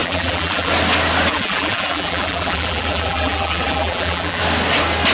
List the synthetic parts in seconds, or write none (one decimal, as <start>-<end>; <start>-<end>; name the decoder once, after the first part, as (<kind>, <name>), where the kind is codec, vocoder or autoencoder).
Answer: 0.0-0.7 (vocoder, BigVGAN v2); 1.3-4.4